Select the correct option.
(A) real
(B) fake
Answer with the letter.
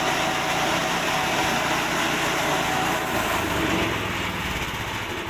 A